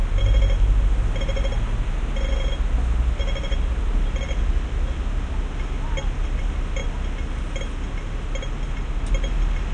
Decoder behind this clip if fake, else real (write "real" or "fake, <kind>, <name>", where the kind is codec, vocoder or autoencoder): real